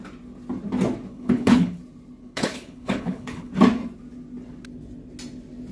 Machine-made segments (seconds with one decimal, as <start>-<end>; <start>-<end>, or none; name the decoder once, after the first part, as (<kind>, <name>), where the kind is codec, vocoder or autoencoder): 1.1-1.8 (codec, HILCodec); 2.2-3.5